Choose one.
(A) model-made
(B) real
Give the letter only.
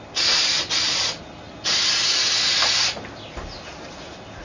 B